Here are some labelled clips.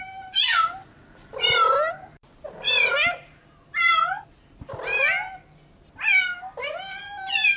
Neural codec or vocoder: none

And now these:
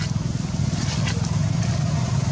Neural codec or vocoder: none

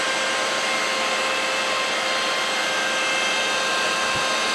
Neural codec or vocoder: none